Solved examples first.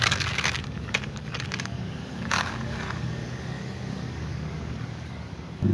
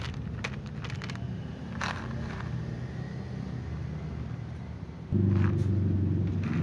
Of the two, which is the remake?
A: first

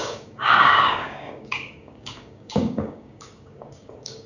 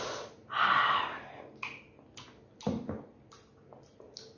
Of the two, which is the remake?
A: first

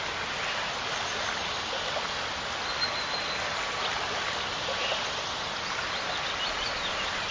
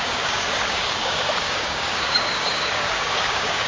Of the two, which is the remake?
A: second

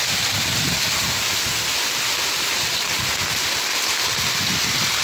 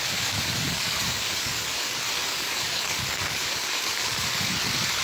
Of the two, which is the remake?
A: second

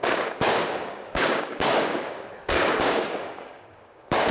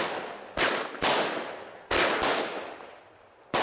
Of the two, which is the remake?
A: first